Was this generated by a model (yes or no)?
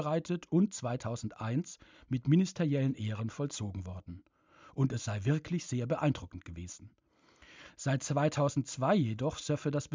no